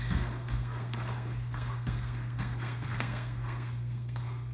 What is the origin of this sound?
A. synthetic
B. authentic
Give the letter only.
A